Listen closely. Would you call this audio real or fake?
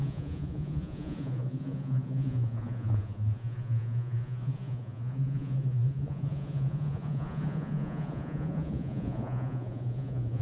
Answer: fake